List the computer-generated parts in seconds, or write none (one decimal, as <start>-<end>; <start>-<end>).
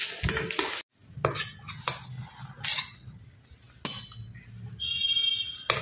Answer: none